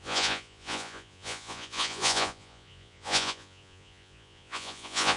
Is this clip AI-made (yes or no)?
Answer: yes